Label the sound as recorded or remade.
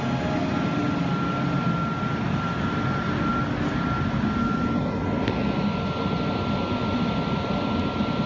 recorded